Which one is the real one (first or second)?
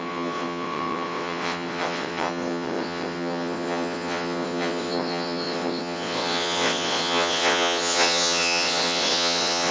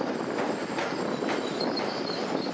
second